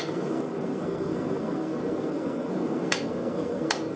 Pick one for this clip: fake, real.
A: fake